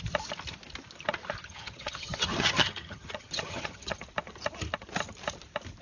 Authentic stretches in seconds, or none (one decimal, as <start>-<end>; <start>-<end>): 0.0-1.4; 4.0-5.8